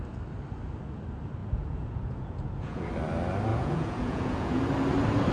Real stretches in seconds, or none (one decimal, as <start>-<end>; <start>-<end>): 0.0-1.4; 2.9-3.5; 4.6-5.3